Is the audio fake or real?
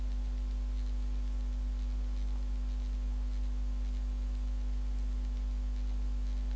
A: real